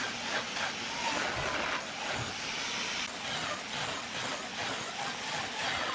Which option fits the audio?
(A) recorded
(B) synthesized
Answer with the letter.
A